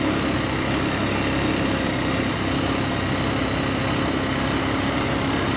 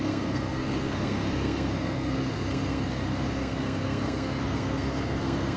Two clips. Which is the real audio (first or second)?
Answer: first